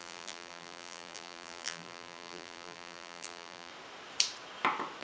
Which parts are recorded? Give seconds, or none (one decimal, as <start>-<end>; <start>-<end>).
3.7-5.0

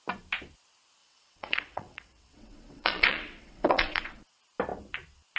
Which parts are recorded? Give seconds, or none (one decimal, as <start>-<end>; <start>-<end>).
0.0-1.0; 4.2-5.4

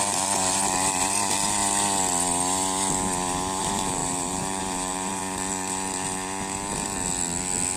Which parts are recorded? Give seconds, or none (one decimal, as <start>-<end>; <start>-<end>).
1.6-3.6; 5.2-7.8